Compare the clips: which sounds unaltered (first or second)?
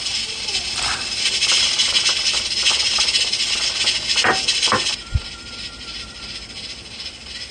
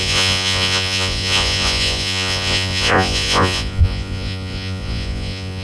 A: first